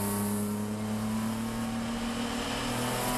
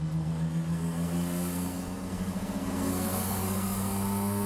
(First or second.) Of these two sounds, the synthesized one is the second